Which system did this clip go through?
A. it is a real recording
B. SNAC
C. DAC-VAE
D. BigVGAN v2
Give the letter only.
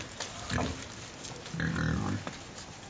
A